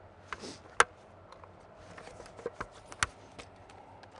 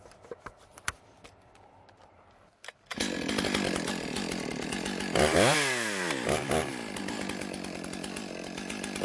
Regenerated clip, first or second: second